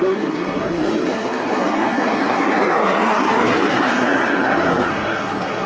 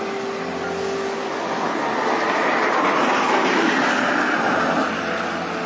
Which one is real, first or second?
second